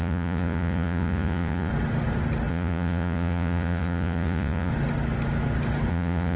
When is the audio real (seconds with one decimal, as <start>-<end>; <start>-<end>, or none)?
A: 1.7-2.5; 4.7-5.9